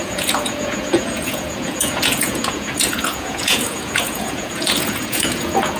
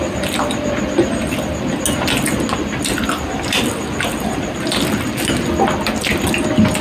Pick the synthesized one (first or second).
first